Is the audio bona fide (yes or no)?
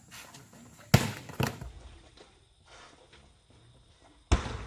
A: yes